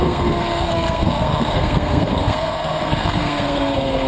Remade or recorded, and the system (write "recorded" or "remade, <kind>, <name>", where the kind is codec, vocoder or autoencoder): remade, codec, SNAC